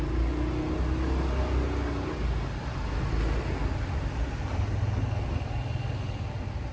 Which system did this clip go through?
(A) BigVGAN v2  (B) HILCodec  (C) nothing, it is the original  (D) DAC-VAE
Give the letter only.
C